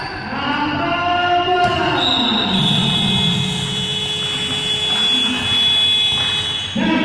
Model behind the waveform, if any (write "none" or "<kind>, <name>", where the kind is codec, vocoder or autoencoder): none